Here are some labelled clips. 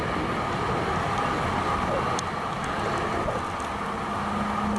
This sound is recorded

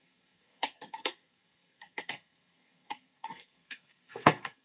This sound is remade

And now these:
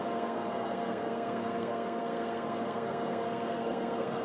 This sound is remade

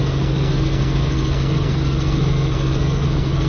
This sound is remade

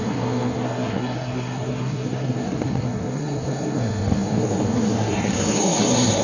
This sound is remade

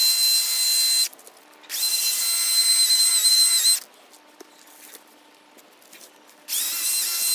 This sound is recorded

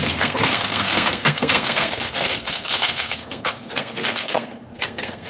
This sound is remade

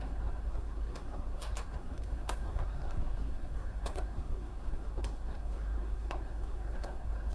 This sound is remade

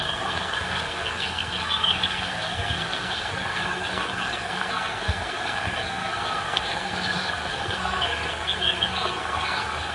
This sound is remade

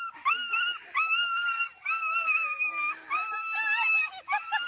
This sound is recorded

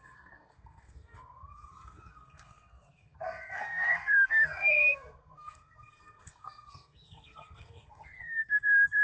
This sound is remade